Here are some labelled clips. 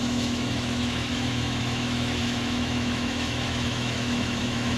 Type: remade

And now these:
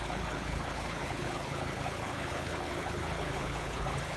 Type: remade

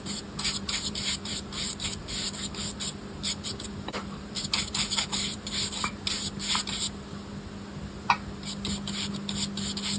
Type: recorded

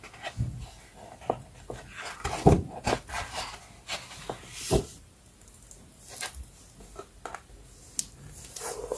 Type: recorded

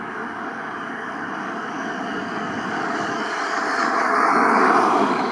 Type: remade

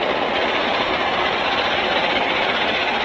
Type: remade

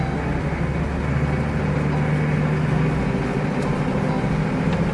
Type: recorded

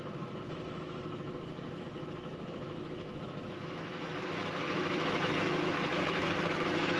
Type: remade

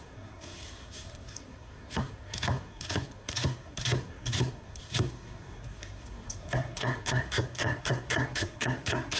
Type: remade